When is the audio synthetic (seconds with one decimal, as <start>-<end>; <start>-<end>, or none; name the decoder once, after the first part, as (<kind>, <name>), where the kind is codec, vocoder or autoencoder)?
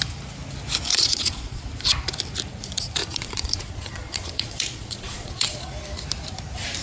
0.9-1.6 (vocoder, Vocos); 3.0-5.6